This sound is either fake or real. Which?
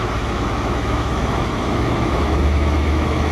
fake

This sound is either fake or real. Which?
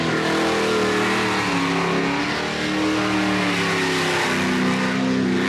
real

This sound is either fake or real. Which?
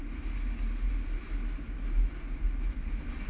real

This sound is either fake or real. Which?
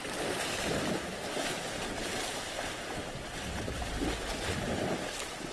real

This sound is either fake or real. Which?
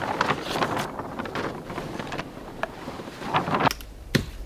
real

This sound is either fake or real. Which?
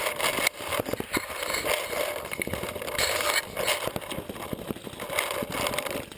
real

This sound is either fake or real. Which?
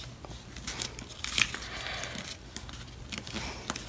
real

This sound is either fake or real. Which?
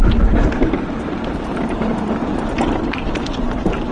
fake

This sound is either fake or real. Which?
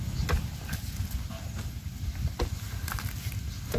real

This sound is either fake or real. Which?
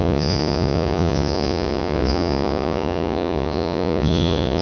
fake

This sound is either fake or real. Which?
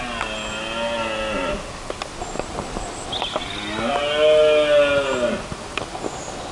real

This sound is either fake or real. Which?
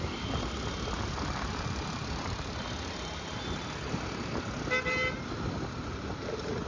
real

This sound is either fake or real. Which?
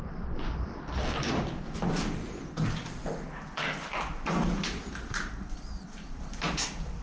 fake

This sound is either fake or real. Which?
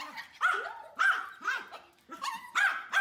fake